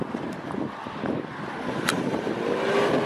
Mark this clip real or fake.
real